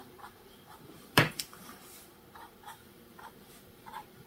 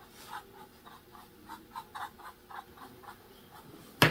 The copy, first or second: first